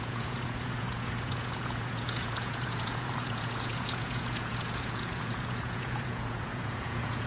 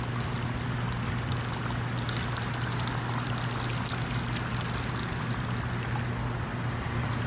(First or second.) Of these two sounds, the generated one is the first